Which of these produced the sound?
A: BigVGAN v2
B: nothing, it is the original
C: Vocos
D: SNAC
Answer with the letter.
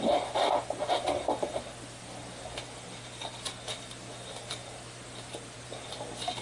B